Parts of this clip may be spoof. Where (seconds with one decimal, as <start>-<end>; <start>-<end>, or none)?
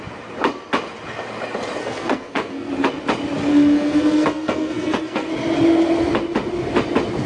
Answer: 1.8-2.7; 3.5-5.3